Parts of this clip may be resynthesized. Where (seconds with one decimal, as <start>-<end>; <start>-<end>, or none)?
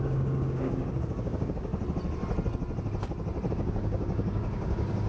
0.0-1.7; 3.5-5.1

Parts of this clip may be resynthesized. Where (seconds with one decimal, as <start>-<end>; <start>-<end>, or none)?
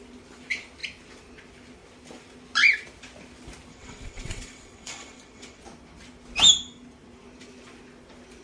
3.7-5.6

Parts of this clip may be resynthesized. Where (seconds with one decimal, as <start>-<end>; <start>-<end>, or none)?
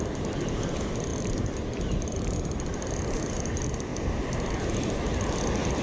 none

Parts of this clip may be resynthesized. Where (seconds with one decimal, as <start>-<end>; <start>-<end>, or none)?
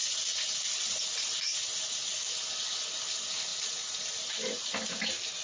0.0-1.1; 1.5-2.3; 3.5-4.2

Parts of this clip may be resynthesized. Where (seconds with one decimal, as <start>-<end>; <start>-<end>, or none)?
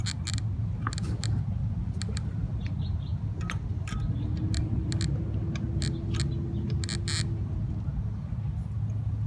none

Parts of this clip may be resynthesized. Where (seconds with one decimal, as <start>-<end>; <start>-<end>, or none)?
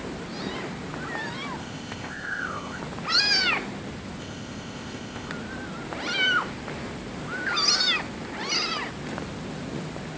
1.6-2.8; 4.2-5.3